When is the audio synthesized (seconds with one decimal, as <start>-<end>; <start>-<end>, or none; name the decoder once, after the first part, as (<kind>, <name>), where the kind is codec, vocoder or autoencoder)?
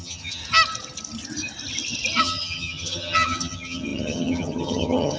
0.0-0.4 (vocoder, HiFi-GAN); 2.2-5.2